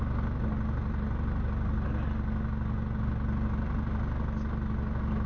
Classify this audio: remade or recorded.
recorded